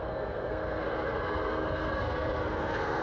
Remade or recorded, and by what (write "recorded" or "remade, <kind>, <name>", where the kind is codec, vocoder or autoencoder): remade, codec, SNAC